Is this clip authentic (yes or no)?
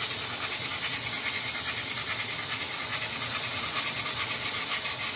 yes